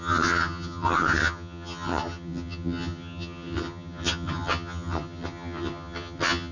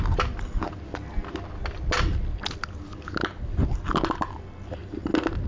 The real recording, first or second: second